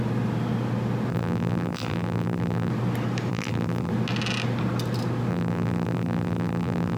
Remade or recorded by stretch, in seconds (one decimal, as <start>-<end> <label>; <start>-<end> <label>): 0.0-1.1 recorded; 1.1-2.7 remade; 2.7-3.3 recorded; 3.3-3.9 remade; 3.9-5.3 recorded; 5.3-7.0 remade